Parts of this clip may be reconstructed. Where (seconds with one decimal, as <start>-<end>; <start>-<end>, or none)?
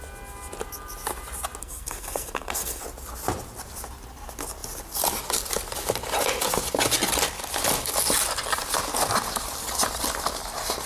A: 1.6-2.8